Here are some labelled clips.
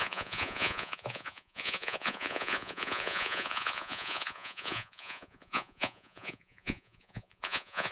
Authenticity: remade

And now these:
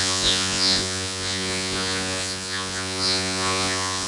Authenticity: remade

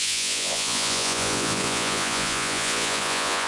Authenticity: remade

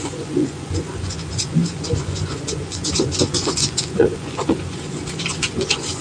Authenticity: remade